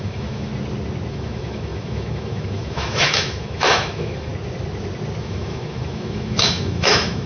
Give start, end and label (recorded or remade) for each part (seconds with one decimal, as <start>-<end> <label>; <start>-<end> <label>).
0.0-0.5 remade; 0.5-1.1 recorded; 1.1-4.3 remade; 4.3-5.2 recorded; 5.2-7.3 remade